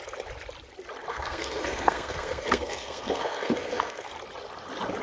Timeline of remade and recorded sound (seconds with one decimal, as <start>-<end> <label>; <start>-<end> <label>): 0.0-1.1 recorded; 1.1-4.1 remade; 4.1-5.0 recorded